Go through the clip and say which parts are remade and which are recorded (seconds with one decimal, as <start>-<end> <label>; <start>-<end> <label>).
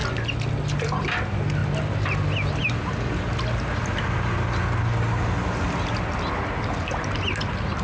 0.0-7.8 recorded